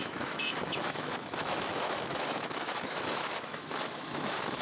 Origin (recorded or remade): remade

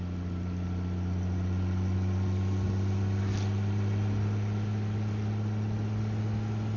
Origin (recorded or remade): recorded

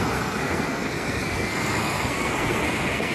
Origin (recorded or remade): remade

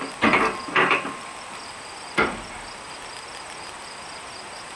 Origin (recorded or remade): recorded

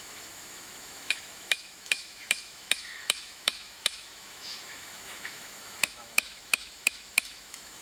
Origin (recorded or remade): remade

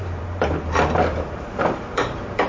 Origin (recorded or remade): remade